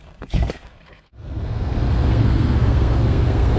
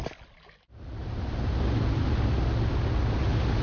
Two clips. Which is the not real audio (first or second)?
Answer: first